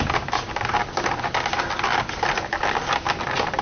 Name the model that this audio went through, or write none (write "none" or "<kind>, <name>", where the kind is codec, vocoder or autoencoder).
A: none